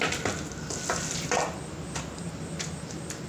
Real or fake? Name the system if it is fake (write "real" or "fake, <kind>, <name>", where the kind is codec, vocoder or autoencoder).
real